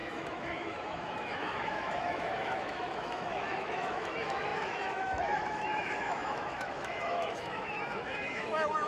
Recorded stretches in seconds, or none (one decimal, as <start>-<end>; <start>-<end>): none

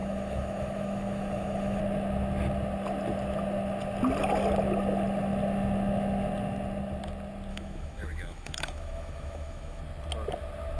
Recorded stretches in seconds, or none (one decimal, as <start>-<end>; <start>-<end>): 1.8-7.5; 9.8-10.8

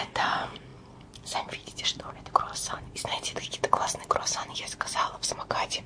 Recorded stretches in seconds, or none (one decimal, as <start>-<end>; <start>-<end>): 0.0-5.9

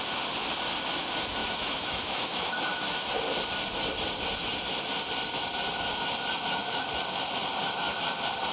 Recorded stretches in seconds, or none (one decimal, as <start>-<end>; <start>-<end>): 0.0-1.4; 3.1-8.5